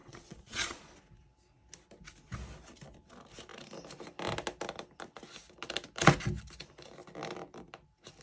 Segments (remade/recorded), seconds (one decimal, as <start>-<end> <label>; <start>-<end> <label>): 0.0-0.8 remade; 0.8-8.2 recorded

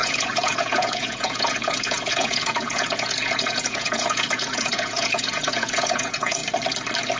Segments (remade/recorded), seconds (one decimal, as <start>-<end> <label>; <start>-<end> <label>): 0.0-6.4 remade; 6.4-7.2 recorded

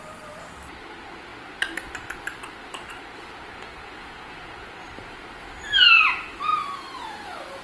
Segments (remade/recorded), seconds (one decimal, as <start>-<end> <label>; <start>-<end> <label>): 0.0-3.5 recorded; 3.5-4.7 remade; 4.7-7.6 recorded

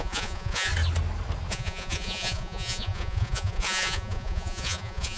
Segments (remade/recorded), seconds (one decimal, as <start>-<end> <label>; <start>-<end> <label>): 0.0-0.7 remade; 0.7-1.5 recorded; 1.5-5.2 remade

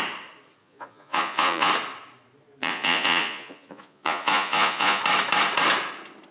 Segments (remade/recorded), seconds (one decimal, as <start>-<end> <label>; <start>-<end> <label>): 0.0-0.6 recorded; 0.6-1.7 remade; 1.7-2.6 recorded; 2.6-5.0 remade; 5.0-6.3 recorded

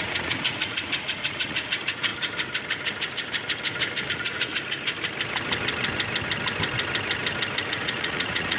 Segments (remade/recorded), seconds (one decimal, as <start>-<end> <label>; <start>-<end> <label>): 0.0-2.1 remade; 2.1-4.1 recorded; 4.1-4.5 remade; 4.5-7.6 recorded; 7.6-8.6 remade

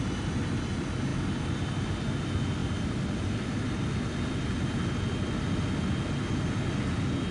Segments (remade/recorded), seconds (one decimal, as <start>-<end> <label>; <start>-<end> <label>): 0.0-7.3 recorded

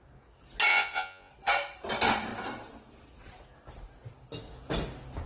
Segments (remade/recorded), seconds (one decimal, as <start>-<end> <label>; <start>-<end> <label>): 0.0-0.7 recorded; 0.7-1.3 remade; 1.3-5.3 recorded